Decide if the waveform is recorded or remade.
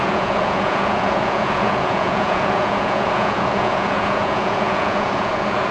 remade